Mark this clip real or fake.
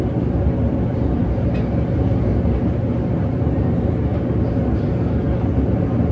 real